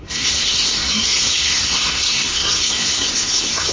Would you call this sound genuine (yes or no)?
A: no